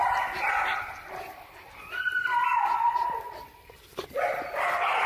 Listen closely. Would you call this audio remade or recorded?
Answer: recorded